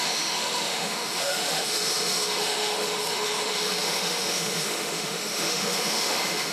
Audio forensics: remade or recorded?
remade